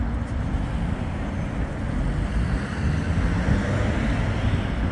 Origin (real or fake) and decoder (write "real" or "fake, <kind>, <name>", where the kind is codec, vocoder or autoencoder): real